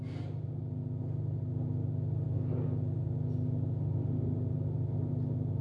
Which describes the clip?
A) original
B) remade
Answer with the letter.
A